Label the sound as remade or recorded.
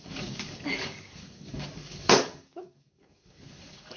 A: remade